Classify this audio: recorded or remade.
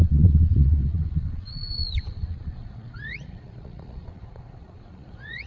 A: remade